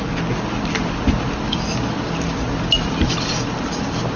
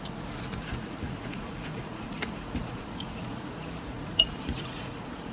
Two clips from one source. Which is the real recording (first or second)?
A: first